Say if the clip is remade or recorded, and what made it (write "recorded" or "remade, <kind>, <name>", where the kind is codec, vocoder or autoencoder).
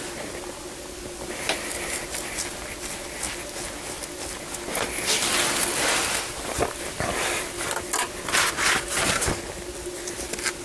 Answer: recorded